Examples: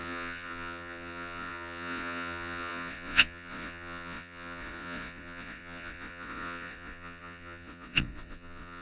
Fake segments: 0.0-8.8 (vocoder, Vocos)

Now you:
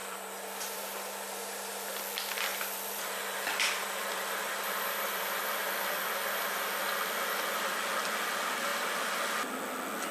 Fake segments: 0.0-0.8 (vocoder, BigVGAN v2); 2.5-6.8; 8.7-9.2

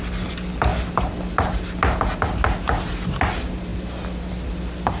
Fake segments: none

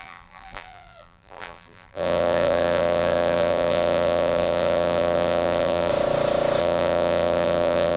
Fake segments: 0.0-5.9 (vocoder, BigVGAN v2); 6.6-8.0

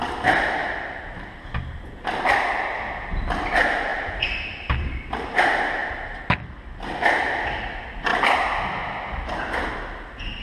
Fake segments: 3.9-4.9 (vocoder, BigVGAN v2); 5.8-6.6

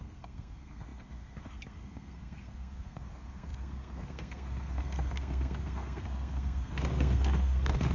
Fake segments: 0.0-7.9 (codec, SNAC)